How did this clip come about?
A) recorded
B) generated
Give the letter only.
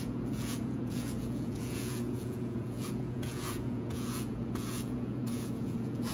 B